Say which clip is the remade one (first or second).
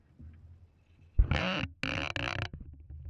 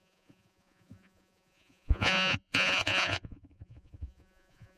second